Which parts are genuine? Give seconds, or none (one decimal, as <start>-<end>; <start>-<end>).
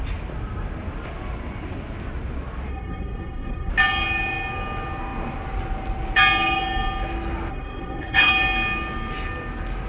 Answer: 0.0-2.7; 3.7-7.5; 8.3-9.9